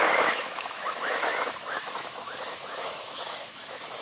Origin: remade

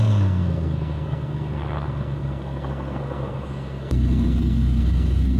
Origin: remade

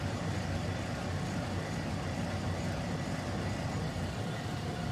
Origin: recorded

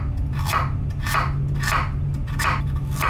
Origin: recorded